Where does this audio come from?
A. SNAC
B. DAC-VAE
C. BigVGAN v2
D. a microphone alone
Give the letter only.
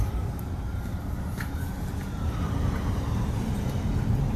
C